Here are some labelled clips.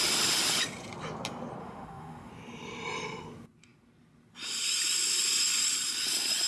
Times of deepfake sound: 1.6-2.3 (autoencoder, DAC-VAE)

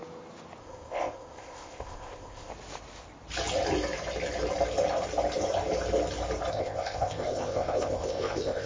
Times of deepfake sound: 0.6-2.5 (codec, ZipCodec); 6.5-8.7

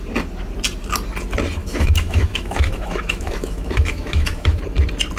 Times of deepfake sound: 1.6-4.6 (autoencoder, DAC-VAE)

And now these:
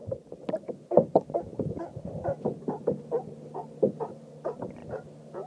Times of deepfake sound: 0.0-0.7 (vocoder, BigVGAN v2); 1.5-4.3

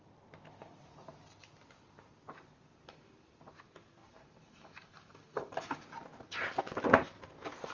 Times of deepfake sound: 4.0-5.6 (vocoder, BigVGAN v2); 6.1-6.6

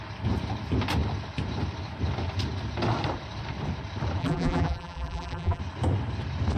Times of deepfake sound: 4.2-5.6 (vocoder, BigVGAN v2)

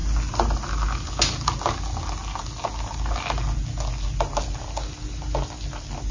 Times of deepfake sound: none